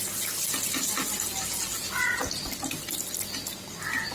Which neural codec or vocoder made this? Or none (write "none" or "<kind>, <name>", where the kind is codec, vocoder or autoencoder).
none